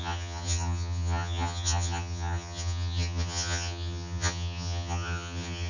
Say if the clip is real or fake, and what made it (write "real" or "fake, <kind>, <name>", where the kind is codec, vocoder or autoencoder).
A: fake, vocoder, HiFi-GAN